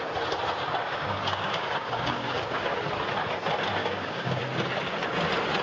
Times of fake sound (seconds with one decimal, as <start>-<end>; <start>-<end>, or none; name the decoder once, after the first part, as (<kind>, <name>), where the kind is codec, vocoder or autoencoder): 0.8-2.8 (codec, DAC); 3.8-4.4